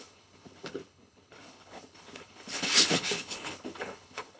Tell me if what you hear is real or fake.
fake